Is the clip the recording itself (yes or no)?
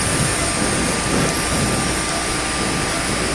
yes